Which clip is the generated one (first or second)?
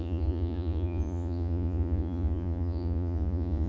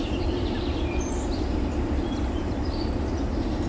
first